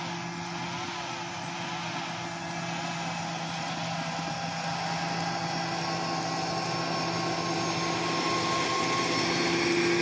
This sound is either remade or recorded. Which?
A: recorded